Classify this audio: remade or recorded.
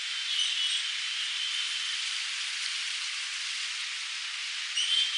recorded